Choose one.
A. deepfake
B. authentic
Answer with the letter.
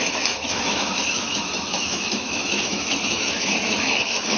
A